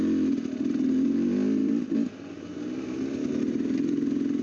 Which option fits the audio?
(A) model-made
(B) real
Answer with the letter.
B